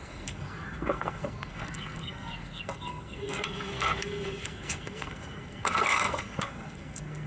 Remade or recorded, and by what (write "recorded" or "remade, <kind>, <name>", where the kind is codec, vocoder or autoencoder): remade, codec, SNAC